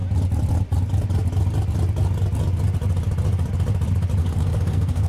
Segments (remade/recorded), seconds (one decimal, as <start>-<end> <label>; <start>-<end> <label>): 0.0-4.2 recorded; 4.2-5.1 remade